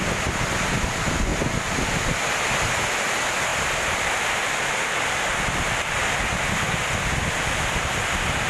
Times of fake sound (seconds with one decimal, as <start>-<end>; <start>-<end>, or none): none